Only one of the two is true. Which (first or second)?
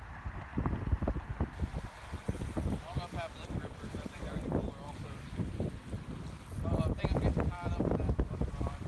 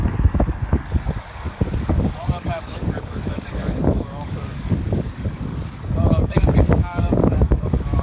first